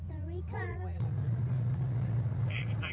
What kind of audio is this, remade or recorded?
remade